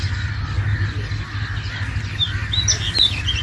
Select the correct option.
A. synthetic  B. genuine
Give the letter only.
B